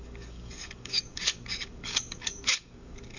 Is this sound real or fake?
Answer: fake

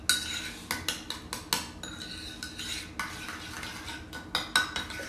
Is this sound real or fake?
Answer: real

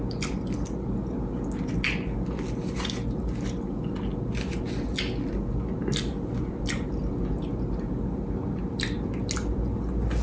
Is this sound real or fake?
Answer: real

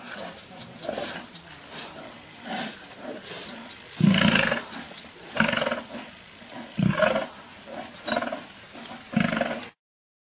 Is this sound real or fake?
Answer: real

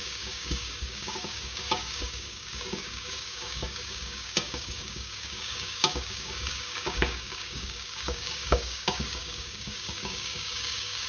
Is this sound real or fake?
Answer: fake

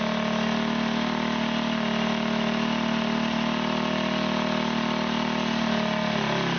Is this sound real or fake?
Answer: real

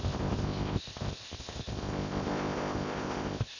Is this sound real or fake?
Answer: fake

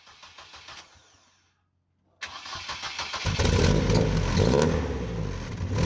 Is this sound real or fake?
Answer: real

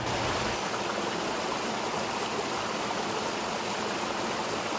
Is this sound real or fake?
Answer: real